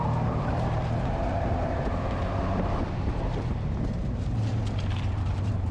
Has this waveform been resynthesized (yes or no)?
yes